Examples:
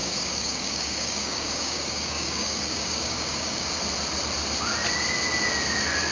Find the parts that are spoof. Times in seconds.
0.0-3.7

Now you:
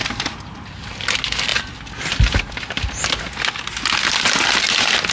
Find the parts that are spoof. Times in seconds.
none

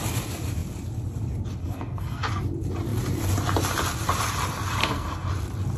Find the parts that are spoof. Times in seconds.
1.6-2.4; 4.8-5.3

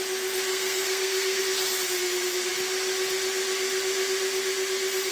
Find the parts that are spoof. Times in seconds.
0.5-1.4

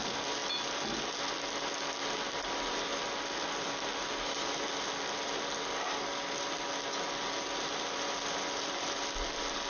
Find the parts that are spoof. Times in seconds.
none

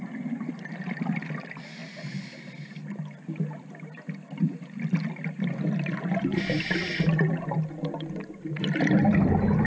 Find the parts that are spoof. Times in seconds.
none

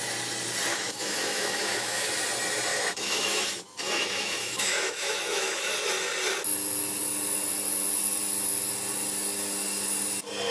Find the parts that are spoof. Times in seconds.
0.7-2.1; 2.7-5.7

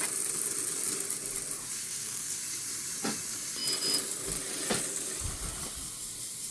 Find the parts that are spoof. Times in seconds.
1.8-2.4